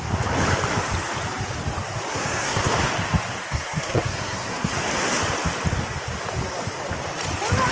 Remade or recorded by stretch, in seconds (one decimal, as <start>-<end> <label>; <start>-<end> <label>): 0.0-2.1 recorded; 2.1-2.6 remade; 2.6-3.5 recorded; 3.5-4.7 remade; 4.7-7.7 recorded